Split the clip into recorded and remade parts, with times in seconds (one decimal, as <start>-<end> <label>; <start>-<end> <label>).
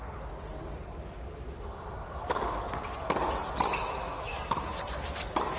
0.0-3.8 recorded; 3.8-4.3 remade; 4.3-5.6 recorded